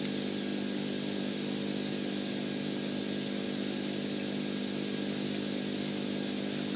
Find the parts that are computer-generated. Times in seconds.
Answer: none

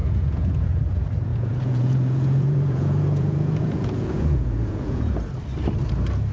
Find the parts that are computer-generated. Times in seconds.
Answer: 0.0-0.8 (vocoder, Vocos); 1.3-5.1

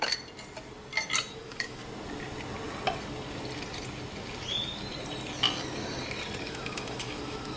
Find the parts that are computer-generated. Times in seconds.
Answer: 1.3-1.8 (autoencoder, DAC-VAE); 6.4-7.6

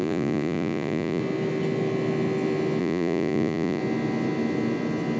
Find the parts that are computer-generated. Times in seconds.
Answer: 0.0-1.2 (vocoder, Vocos); 2.8-3.8